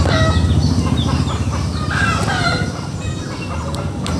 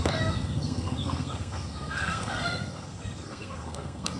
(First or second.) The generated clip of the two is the second